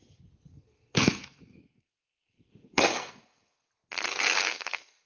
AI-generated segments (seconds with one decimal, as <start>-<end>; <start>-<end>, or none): 0.5-3.6; 4.1-5.1